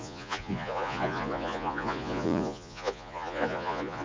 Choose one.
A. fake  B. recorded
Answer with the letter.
A